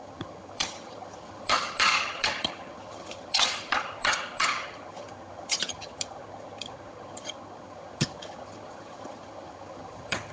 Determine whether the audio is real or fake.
fake